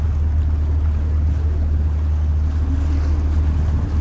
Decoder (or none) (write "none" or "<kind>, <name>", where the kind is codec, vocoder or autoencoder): none